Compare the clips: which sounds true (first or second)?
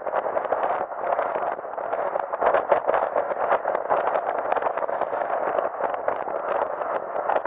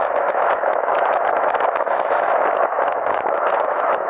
first